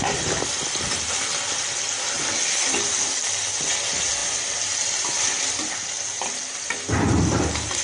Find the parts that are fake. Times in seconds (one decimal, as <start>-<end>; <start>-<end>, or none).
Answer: none